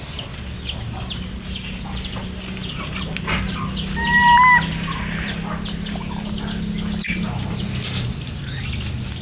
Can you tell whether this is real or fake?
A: real